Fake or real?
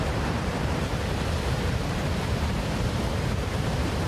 fake